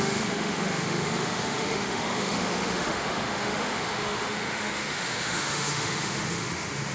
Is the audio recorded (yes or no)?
no